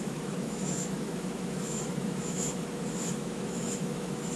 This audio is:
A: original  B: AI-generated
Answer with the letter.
B